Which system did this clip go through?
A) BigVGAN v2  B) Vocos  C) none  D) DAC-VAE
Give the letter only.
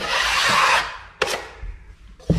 C